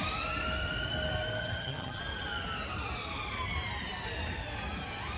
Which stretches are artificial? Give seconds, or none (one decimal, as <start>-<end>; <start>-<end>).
1.4-2.0